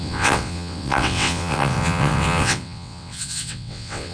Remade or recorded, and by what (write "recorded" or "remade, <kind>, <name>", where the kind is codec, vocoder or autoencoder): remade, vocoder, WaveNeXt